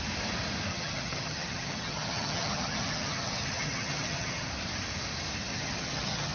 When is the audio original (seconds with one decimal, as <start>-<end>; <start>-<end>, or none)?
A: 0.0-0.7; 4.5-5.5